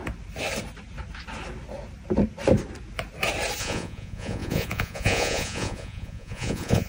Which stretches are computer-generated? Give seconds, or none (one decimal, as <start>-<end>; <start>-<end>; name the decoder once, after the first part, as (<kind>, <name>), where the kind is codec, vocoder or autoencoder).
3.6-6.9 (vocoder, Vocos)